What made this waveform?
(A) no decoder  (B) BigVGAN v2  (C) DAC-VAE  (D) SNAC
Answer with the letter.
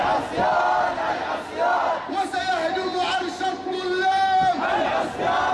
A